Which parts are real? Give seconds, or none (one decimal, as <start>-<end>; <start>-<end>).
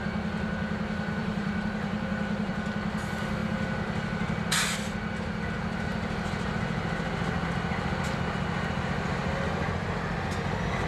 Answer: 0.0-1.2; 2.5-5.9; 6.6-10.9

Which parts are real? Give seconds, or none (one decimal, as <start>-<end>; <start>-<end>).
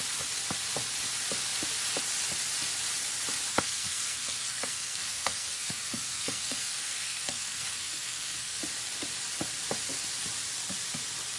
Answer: 0.0-3.5; 8.6-11.4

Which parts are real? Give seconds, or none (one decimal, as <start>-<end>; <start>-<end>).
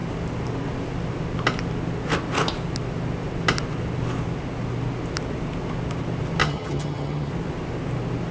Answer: 0.0-6.4; 7.3-8.3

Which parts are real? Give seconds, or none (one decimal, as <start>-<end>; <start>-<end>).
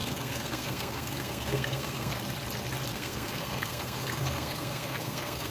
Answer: 2.2-2.9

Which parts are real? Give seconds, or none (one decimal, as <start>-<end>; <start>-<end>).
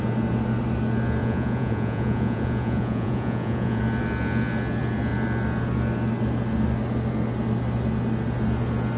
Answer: 0.0-1.2; 3.8-9.0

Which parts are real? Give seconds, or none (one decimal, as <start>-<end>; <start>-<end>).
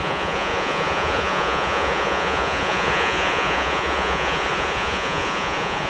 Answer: none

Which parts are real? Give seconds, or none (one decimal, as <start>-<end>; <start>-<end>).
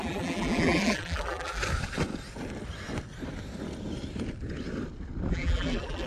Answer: 1.6-5.3